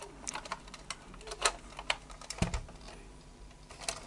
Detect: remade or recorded recorded